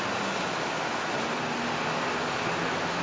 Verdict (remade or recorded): recorded